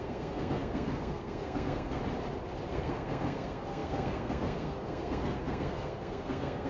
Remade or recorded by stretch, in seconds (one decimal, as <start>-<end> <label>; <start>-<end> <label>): 0.0-2.0 remade; 2.0-2.7 recorded; 2.7-6.7 remade